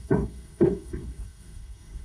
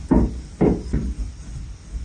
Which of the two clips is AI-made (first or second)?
first